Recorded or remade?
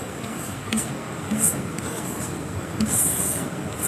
remade